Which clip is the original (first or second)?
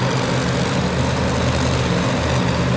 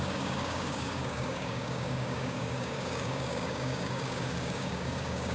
first